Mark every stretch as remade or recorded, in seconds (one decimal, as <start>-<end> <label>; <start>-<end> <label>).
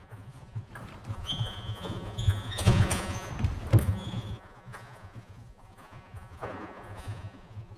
0.0-0.7 remade; 0.7-1.1 recorded; 1.1-3.3 remade; 3.3-3.8 recorded; 3.8-7.8 remade